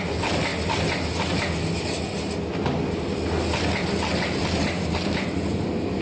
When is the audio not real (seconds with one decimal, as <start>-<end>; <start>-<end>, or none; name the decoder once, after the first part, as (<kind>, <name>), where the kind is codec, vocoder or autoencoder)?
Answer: none